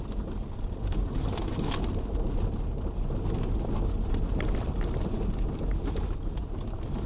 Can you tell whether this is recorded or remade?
recorded